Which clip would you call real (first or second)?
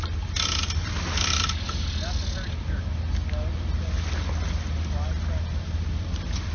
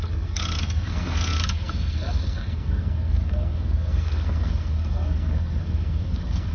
first